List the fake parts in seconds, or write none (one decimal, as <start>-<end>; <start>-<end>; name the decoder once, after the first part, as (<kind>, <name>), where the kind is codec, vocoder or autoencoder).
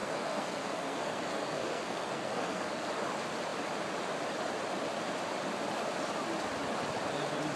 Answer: 0.0-2.9 (codec, SNAC)